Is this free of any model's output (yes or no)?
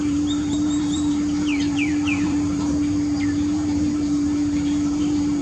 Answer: no